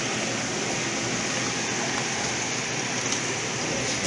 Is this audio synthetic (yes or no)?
no